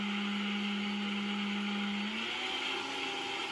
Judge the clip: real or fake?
real